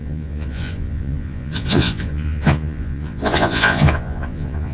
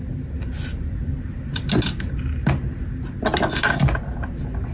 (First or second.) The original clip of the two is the second